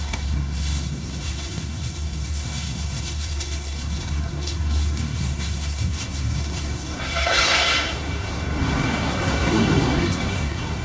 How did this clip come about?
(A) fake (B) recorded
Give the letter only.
A